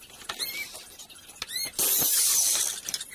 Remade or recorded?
recorded